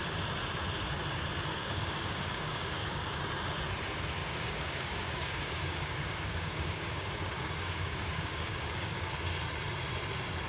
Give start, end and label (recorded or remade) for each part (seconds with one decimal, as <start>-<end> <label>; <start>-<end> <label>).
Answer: 0.0-1.5 recorded; 1.5-3.2 remade; 3.2-4.2 recorded; 4.2-9.1 remade; 9.1-10.5 recorded